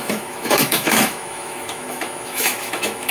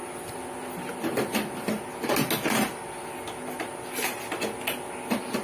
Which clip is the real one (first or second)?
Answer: second